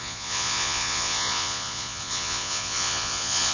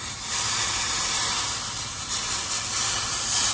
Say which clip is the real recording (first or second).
second